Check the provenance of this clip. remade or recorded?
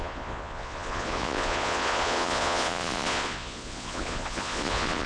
remade